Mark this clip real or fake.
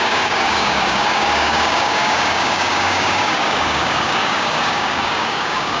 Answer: fake